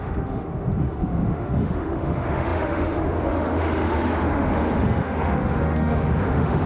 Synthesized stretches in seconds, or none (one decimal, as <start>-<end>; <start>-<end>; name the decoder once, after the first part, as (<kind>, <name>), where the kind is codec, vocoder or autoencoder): 0.0-6.7 (autoencoder, DAC-VAE)